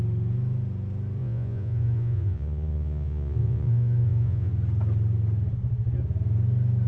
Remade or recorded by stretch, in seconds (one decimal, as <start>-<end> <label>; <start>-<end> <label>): 0.0-1.2 recorded; 1.2-4.5 remade; 4.5-6.9 recorded